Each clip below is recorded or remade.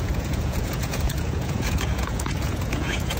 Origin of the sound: remade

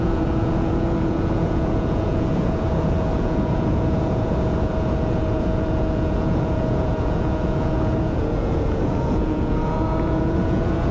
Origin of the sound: remade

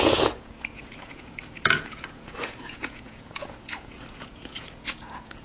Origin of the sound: remade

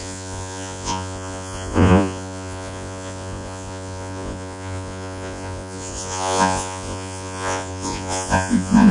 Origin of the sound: remade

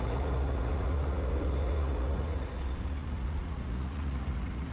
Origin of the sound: remade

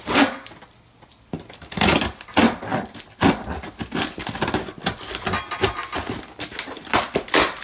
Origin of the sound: recorded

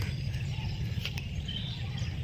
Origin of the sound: recorded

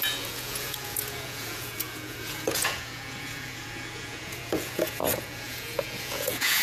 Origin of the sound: remade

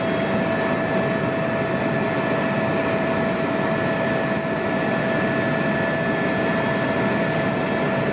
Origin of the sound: recorded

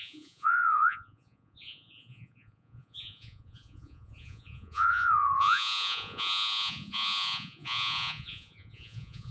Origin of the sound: remade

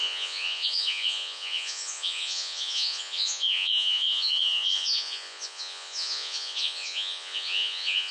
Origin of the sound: remade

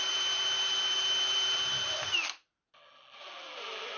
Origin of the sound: recorded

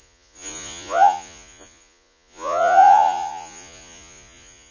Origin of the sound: remade